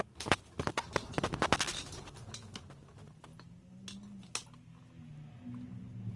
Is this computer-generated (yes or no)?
no